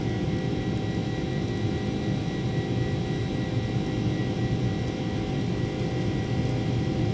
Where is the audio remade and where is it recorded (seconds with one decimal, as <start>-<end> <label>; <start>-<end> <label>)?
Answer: 0.0-7.1 recorded